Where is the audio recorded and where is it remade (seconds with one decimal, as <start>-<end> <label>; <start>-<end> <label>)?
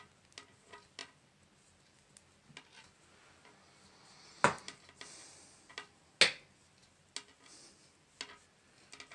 0.0-9.1 recorded